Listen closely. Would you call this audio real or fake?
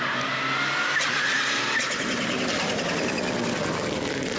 real